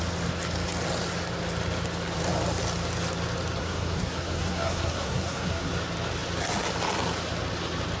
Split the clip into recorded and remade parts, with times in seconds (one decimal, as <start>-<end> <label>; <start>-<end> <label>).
0.0-3.6 recorded; 3.6-5.7 remade; 5.7-8.0 recorded